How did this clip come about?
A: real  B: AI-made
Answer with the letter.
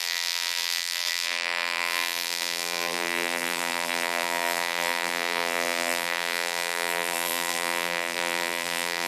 B